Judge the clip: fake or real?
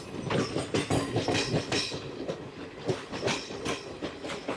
real